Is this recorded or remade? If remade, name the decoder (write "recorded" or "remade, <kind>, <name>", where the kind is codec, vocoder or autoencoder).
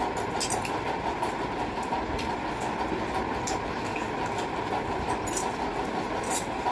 recorded